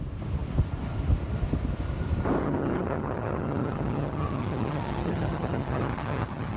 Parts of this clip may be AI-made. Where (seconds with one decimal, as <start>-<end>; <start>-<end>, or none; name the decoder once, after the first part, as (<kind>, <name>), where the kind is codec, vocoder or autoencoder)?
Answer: 2.4-6.6 (vocoder, HiFi-GAN)